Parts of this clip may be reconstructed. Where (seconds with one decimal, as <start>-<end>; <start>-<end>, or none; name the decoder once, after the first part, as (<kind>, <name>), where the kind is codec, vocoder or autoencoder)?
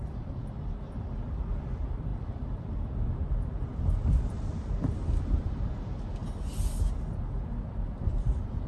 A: 0.0-6.2 (vocoder, BigVGAN v2); 8.1-8.7